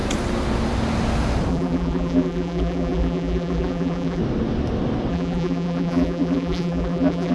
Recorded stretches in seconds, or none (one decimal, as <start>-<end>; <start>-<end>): 0.0-1.5; 4.2-5.1